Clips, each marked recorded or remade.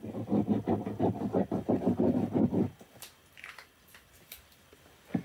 recorded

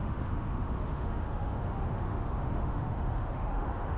remade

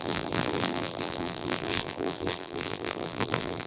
remade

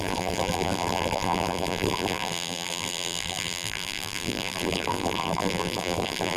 remade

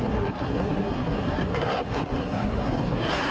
remade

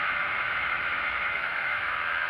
remade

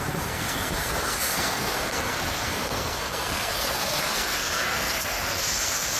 remade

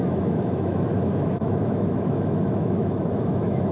remade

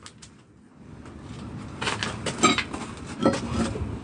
recorded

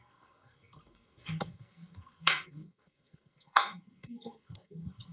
remade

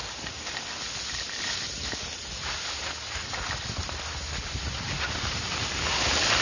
recorded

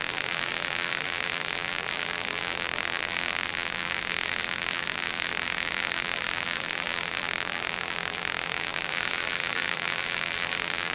remade